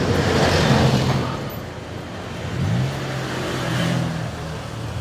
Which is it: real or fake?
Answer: real